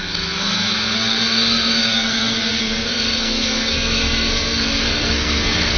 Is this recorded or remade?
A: remade